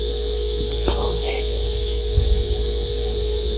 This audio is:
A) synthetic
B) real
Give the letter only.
A